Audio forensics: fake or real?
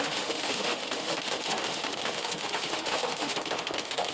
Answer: fake